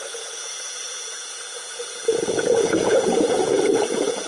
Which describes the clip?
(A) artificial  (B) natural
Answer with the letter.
A